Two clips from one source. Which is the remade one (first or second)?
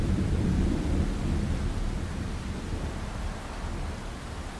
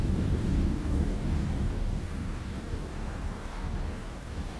second